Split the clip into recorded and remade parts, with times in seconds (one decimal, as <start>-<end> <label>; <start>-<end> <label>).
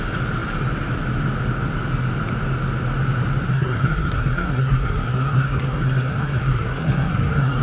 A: 0.0-3.5 recorded; 3.5-7.6 remade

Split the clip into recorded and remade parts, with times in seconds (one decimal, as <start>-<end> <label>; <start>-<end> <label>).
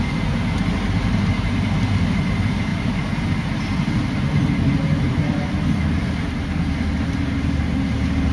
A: 0.0-8.3 recorded